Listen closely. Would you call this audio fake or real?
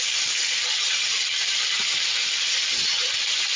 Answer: real